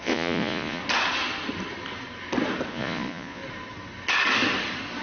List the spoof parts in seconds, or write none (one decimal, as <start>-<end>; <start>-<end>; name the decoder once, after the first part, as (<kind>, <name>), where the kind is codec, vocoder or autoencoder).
0.0-0.8 (vocoder, Vocos); 2.7-3.4